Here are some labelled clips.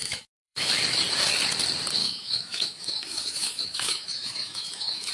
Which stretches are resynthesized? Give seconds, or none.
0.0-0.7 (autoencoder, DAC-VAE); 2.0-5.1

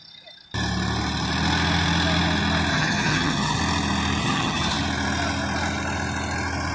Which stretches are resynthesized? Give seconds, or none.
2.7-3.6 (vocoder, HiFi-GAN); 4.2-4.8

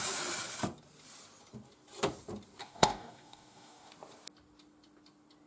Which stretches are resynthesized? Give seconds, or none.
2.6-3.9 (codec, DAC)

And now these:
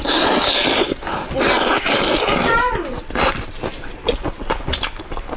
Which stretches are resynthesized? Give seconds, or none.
none

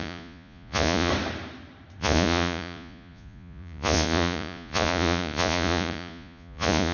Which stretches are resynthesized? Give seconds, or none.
0.0-1.1 (vocoder, Vocos); 2.0-6.9

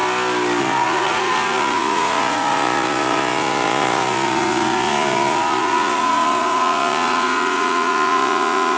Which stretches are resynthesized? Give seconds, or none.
0.6-8.8 (vocoder, Vocos)